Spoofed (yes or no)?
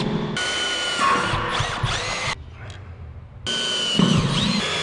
no